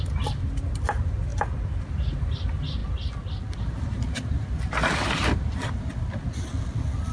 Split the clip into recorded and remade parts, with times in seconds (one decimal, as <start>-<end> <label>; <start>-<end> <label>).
0.0-7.1 recorded